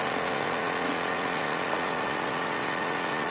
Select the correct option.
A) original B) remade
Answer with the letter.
B